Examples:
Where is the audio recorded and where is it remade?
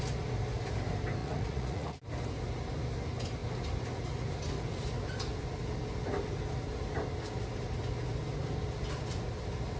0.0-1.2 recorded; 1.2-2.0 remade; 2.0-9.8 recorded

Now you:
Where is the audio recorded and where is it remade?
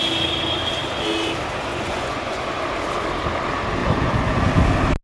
0.0-1.7 recorded; 1.7-2.4 remade; 2.4-3.8 recorded; 3.8-4.4 remade; 4.4-5.0 recorded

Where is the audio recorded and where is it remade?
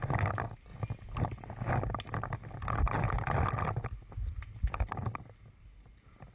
0.0-6.3 recorded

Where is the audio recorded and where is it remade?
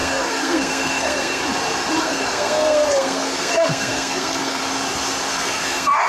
0.0-1.4 remade; 1.4-2.0 recorded; 2.0-4.6 remade; 4.6-5.3 recorded; 5.3-6.1 remade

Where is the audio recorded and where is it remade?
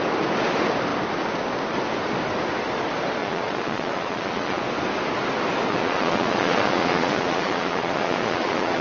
0.0-3.2 recorded; 3.2-4.6 remade; 4.6-5.7 recorded; 5.7-8.8 remade